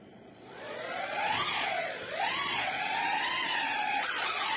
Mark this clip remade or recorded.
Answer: remade